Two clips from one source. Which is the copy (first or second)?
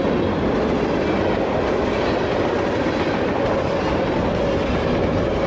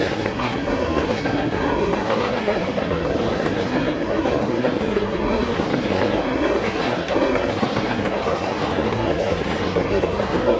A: second